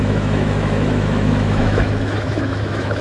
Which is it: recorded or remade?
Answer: remade